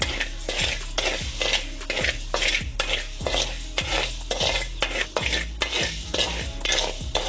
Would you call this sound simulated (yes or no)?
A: no